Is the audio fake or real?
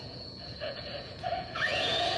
fake